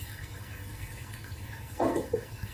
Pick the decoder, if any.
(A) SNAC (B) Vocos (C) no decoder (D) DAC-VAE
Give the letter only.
A